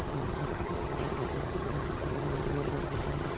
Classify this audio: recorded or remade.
remade